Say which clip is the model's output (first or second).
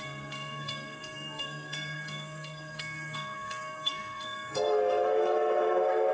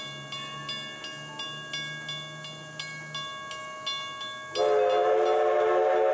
first